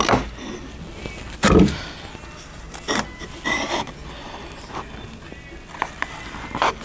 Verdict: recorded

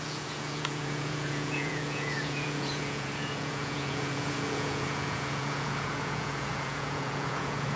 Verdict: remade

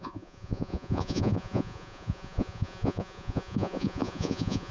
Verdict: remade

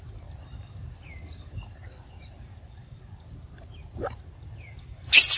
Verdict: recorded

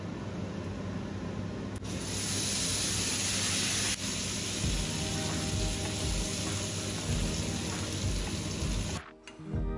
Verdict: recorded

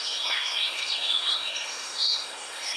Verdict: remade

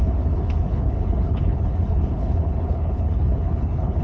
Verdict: remade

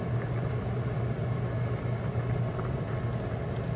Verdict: recorded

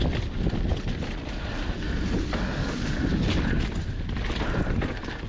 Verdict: recorded